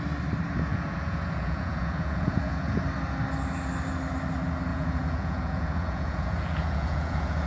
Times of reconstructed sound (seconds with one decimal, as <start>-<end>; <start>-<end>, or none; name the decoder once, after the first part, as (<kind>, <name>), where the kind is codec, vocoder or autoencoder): 0.7-2.8 (vocoder, Vocos); 4.7-7.5